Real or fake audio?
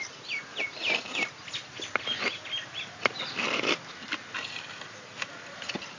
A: real